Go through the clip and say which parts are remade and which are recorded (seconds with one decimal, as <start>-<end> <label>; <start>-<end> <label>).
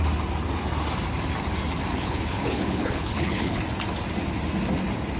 0.0-1.9 recorded; 1.9-3.6 remade; 3.6-5.2 recorded